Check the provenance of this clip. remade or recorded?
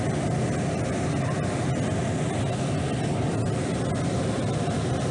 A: recorded